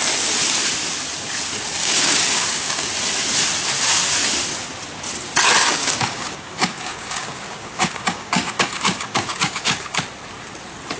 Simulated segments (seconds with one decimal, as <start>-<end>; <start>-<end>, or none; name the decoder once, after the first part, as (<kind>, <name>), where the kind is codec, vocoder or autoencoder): 1.8-2.9 (codec, DAC); 5.6-10.0